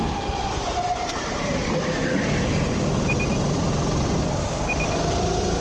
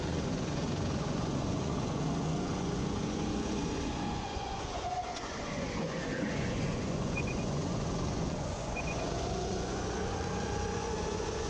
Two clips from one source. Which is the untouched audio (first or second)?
first